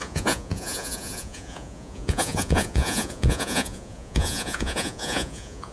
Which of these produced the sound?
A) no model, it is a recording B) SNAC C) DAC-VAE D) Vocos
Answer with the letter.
D